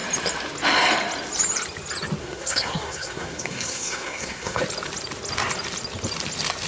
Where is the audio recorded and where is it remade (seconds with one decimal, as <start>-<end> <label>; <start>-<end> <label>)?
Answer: 0.0-2.2 recorded; 2.2-4.6 remade; 4.6-6.7 recorded